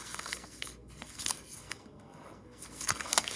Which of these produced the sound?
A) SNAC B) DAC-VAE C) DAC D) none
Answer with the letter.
A